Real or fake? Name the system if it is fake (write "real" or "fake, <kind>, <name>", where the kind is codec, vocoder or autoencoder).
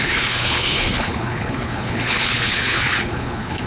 fake, codec, HILCodec